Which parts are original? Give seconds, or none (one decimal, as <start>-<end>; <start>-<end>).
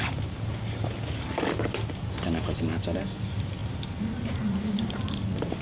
0.0-3.6; 4.8-5.6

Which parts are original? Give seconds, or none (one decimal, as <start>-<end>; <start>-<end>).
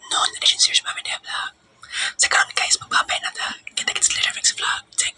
0.0-5.2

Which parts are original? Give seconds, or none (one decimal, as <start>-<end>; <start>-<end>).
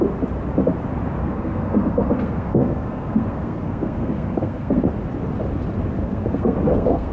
0.0-1.2; 4.8-6.0